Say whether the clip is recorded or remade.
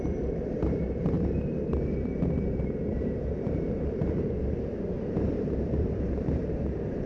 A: remade